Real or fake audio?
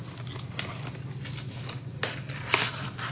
real